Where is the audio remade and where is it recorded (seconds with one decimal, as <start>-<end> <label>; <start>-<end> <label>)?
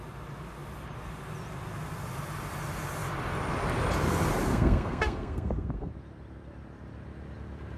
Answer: 0.0-4.5 recorded; 4.5-5.9 remade; 5.9-7.8 recorded